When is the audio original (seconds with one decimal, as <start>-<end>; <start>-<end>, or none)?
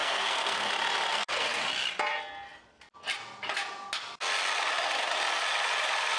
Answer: 0.7-1.1; 1.6-6.2